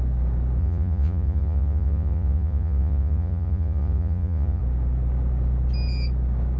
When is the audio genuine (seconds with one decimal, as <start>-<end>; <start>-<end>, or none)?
0.0-0.6; 4.6-6.6